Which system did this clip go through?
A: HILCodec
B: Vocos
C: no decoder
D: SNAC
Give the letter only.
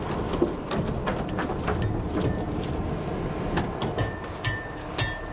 C